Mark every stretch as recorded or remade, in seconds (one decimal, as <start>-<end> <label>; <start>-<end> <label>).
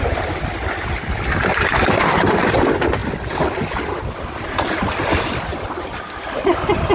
0.0-6.9 recorded